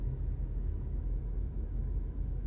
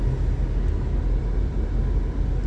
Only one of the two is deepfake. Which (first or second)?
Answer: first